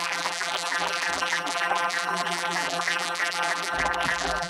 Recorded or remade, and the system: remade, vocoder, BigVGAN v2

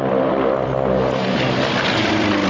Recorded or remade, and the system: remade, vocoder, BigVGAN v2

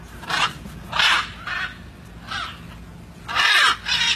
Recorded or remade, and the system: recorded